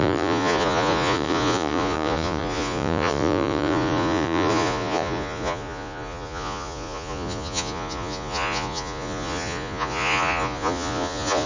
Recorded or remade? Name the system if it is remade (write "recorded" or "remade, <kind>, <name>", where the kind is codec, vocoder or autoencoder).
remade, vocoder, Vocos